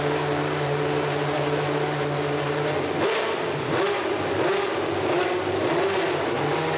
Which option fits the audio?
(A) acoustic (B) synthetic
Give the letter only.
A